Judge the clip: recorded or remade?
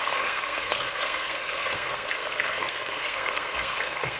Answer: remade